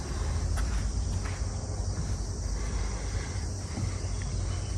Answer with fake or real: real